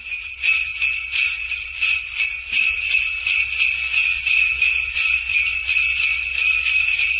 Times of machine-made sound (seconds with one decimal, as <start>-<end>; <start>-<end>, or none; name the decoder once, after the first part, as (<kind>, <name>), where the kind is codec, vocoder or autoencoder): none

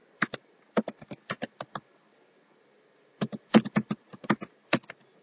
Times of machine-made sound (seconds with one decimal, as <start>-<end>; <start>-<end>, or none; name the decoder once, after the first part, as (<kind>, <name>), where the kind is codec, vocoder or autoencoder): none

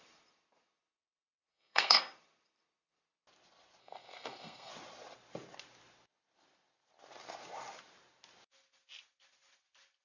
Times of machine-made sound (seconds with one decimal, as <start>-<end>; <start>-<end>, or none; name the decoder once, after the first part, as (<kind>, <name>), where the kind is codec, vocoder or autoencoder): 1.5-2.0 (codec, SNAC); 3.8-4.7

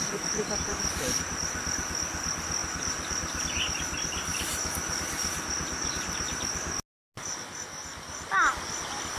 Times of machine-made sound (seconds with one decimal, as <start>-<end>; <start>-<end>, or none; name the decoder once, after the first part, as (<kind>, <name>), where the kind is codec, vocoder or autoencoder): 0.7-1.4 (vocoder, BigVGAN v2); 2.6-3.4; 4.3-6.4

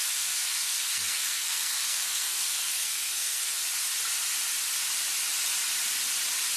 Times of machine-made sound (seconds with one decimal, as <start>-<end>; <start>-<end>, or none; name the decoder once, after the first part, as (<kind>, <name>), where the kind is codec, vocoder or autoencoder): 0.0-3.6 (codec, SNAC)

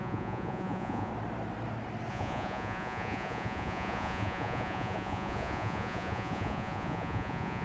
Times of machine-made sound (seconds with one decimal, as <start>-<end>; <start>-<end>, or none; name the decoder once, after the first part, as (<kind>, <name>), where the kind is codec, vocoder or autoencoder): 0.0-1.1 (vocoder, Vocos); 2.1-7.6

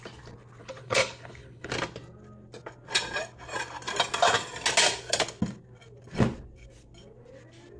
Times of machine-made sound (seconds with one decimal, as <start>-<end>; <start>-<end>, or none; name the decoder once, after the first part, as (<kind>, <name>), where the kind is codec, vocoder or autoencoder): 0.6-1.7 (codec, HILCodec)